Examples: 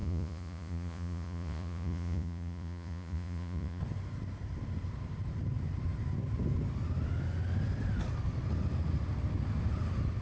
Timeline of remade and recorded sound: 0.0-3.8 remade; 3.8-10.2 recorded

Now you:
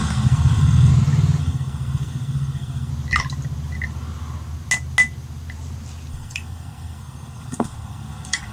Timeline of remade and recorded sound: 0.0-0.9 remade; 0.9-1.4 recorded; 1.4-2.9 remade; 2.9-6.1 recorded; 6.1-8.5 remade